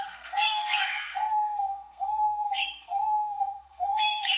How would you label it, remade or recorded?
remade